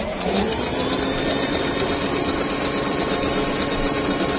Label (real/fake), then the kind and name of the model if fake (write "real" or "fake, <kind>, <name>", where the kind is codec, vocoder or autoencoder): real